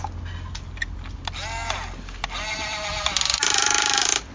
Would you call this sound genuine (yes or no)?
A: yes